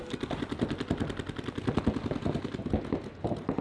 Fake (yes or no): no